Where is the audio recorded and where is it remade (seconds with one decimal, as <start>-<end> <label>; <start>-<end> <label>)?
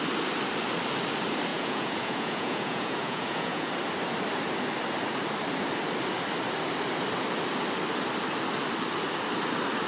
0.0-1.5 recorded; 1.5-3.7 remade; 3.7-9.9 recorded